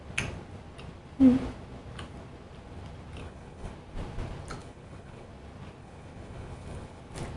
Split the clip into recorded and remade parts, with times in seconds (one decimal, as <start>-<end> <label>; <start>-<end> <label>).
0.0-3.2 recorded; 3.2-3.7 remade; 3.7-4.6 recorded; 4.6-5.3 remade; 5.3-5.8 recorded; 5.8-7.0 remade; 7.0-7.4 recorded